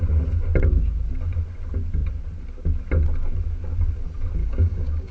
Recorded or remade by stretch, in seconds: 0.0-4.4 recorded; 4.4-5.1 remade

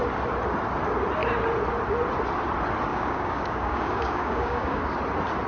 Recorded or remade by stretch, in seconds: 0.0-2.9 recorded; 2.9-4.8 remade; 4.8-5.5 recorded

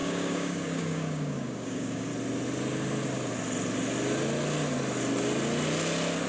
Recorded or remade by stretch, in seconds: 0.0-2.1 remade; 2.1-6.3 recorded

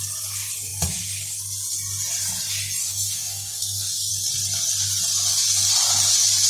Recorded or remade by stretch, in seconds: 0.0-2.8 recorded; 2.8-4.1 remade; 4.1-6.5 recorded

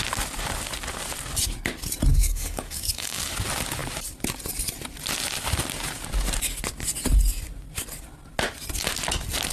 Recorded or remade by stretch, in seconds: 0.0-2.1 recorded; 2.1-3.2 remade; 3.2-9.5 recorded

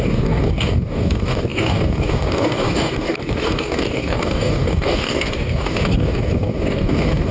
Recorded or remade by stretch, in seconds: 0.0-7.3 remade

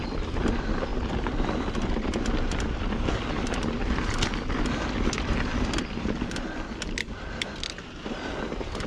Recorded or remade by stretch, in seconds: 0.0-8.9 recorded